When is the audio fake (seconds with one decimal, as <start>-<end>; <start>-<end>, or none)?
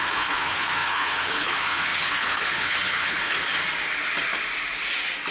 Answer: 0.0-3.5